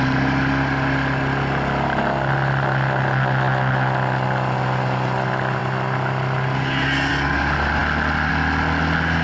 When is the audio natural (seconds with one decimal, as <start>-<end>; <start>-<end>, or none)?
0.0-9.2

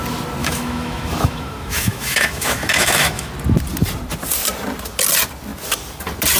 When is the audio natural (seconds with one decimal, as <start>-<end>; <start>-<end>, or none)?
0.0-0.4; 3.3-6.4

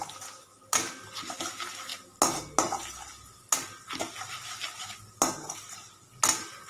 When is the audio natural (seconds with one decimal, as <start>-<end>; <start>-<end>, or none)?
0.0-6.7